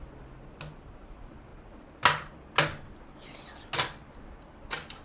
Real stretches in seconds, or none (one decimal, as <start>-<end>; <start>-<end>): 0.0-5.0

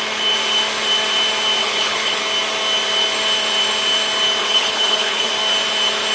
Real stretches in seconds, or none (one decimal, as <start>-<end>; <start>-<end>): 0.0-1.6; 2.2-4.4; 5.3-6.1

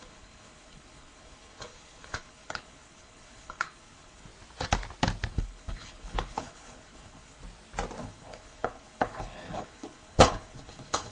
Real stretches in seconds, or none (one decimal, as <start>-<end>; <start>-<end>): 4.3-5.3; 7.4-8.0

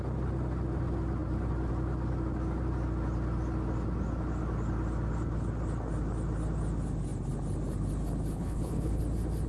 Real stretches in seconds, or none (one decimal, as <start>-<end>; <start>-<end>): 0.0-8.3; 9.0-9.5

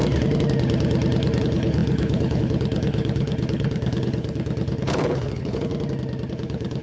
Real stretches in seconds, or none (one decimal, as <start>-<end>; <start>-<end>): 0.0-1.4; 5.7-6.3

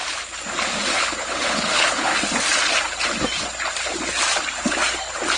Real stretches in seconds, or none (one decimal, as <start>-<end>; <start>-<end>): 0.0-0.9; 2.1-5.4